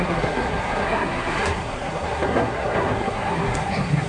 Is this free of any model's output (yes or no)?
no